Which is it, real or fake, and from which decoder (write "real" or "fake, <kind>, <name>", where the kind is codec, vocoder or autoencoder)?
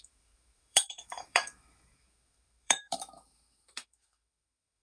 fake, autoencoder, DAC-VAE